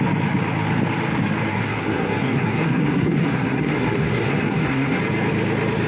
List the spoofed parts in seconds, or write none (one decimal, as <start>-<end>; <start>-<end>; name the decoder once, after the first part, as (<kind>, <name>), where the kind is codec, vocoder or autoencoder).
1.5-5.0 (codec, SNAC)